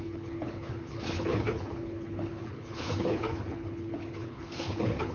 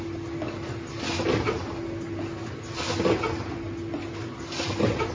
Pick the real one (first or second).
second